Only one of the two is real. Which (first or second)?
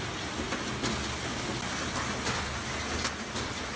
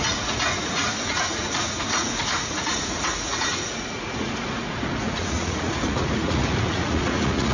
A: first